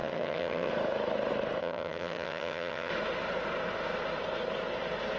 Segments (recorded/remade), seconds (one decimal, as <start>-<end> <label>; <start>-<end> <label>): 0.0-0.7 remade; 0.7-1.6 recorded; 1.6-2.9 remade; 2.9-5.2 recorded